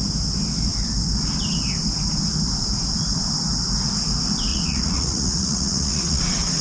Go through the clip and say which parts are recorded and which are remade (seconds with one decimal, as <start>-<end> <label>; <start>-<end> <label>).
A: 0.0-4.5 recorded; 4.5-6.6 remade